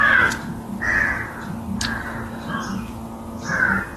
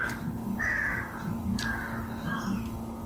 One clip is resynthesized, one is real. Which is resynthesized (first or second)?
second